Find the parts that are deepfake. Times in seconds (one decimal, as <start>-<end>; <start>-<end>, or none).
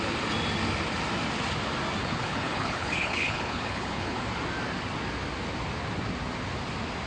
2.0-4.2